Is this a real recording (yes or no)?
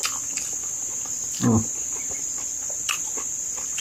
yes